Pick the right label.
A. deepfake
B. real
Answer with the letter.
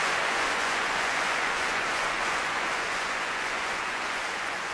A